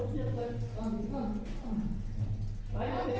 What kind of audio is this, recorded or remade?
recorded